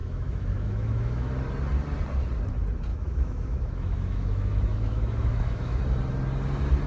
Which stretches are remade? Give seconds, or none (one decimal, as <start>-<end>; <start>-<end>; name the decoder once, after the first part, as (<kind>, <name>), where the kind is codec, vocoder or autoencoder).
0.0-1.3 (autoencoder, DAC-VAE); 2.9-5.8